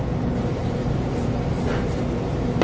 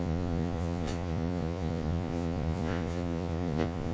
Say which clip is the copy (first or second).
second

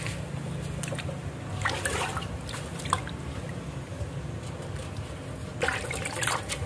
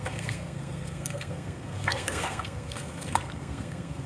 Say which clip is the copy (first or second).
second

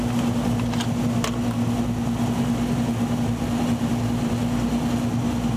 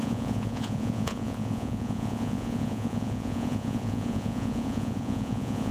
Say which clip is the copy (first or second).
second